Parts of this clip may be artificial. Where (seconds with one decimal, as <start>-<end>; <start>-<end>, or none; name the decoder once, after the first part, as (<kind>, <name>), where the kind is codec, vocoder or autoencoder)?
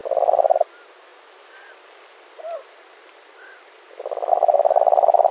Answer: 1.1-4.3 (vocoder, BigVGAN v2)